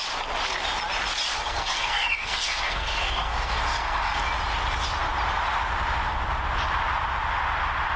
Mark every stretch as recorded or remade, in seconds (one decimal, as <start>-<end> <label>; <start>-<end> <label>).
0.0-1.3 recorded; 1.3-4.2 remade; 4.2-8.0 recorded